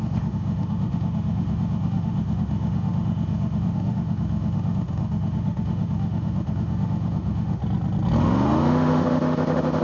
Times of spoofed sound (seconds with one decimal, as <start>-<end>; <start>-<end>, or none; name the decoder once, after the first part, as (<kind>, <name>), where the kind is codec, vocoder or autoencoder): 0.0-7.6 (autoencoder, DAC-VAE); 8.2-9.8